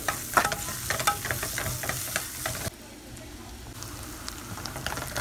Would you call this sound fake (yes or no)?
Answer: no